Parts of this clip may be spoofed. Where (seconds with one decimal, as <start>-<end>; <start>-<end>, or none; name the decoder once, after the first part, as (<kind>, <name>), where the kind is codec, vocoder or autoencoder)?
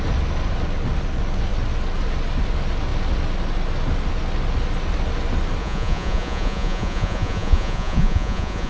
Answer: 5.6-8.7 (vocoder, Vocos)